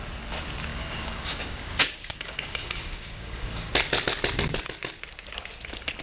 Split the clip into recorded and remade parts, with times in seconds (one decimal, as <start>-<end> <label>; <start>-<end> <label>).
0.0-0.7 recorded; 0.7-3.7 remade; 3.7-6.0 recorded